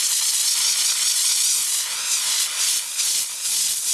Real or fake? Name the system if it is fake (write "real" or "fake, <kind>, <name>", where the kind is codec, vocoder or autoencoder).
real